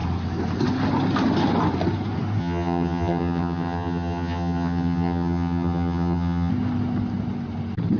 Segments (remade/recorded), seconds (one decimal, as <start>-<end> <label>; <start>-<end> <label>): 0.0-2.4 recorded; 2.4-6.5 remade; 6.5-8.0 recorded